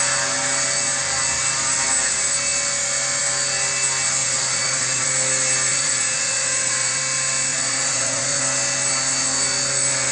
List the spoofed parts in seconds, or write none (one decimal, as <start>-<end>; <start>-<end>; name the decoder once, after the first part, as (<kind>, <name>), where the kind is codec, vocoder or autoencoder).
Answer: 4.2-5.1 (vocoder, Vocos); 5.7-7.0; 7.5-8.4